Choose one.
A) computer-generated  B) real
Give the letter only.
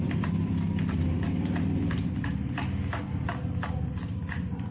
B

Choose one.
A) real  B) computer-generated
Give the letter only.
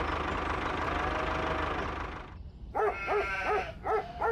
A